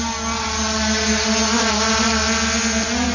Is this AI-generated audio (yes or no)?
no